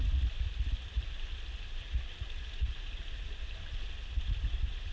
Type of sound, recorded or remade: recorded